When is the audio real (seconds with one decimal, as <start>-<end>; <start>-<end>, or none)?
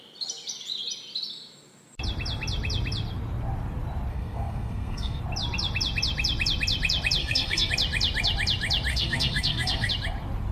0.0-4.1; 5.2-7.2; 7.7-8.9; 9.9-10.5